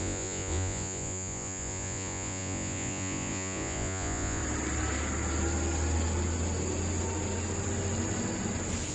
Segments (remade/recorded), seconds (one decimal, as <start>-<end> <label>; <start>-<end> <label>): 0.0-4.4 remade; 4.4-8.9 recorded